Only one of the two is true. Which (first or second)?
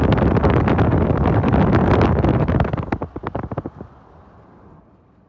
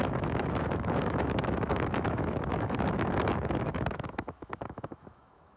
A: first